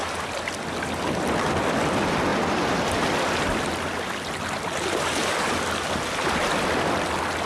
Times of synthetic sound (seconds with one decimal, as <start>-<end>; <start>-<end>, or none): none